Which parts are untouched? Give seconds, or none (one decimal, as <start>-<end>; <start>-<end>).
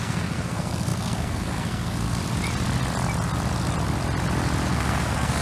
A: 2.2-4.7